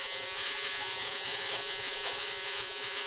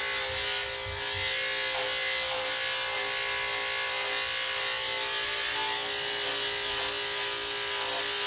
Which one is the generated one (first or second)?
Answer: first